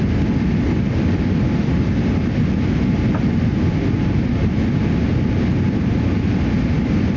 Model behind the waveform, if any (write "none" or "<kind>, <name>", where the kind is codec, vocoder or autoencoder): none